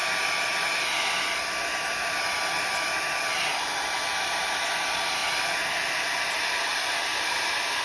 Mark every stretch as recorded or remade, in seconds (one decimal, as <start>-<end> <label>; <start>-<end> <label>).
0.0-7.8 recorded